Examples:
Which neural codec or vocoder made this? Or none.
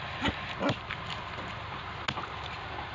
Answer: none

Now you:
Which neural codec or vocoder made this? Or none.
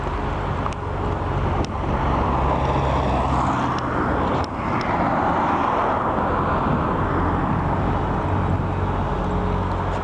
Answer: none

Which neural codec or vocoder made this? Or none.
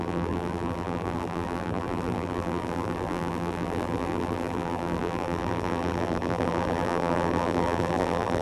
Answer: vocoder, BigVGAN v2